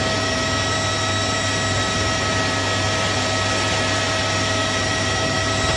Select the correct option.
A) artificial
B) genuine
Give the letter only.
B